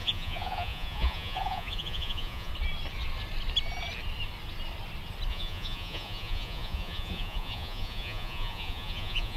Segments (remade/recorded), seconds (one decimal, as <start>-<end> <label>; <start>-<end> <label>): 0.0-2.5 remade; 2.5-5.3 recorded; 5.3-9.4 remade